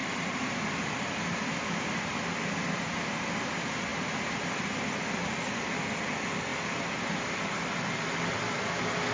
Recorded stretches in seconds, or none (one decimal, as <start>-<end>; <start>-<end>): 0.6-6.5; 7.4-9.1